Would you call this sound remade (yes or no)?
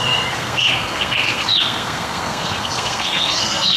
yes